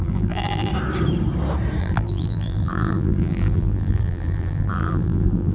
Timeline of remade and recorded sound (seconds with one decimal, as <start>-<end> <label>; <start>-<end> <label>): 0.0-0.7 remade; 0.7-1.8 recorded; 1.8-5.5 remade